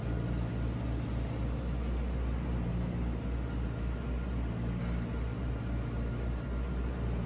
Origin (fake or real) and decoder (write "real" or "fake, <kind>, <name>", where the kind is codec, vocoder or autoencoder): real